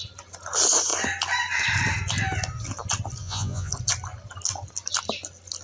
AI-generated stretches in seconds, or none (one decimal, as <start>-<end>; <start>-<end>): 3.2-3.7